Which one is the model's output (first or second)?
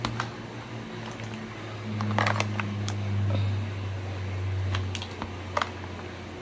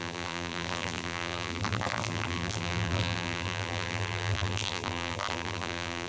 second